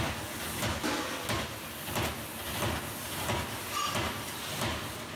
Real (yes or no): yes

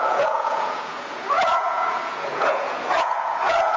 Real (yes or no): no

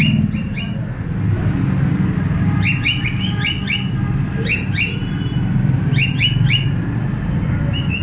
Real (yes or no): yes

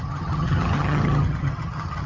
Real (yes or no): no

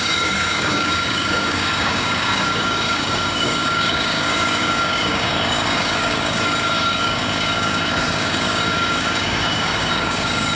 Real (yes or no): no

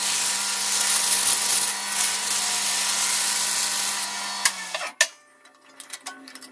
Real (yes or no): yes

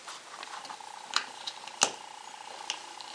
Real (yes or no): yes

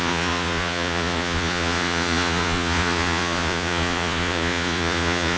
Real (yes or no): no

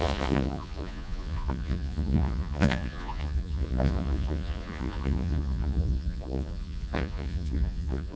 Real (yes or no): no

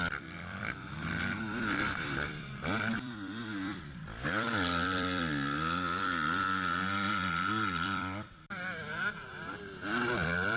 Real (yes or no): no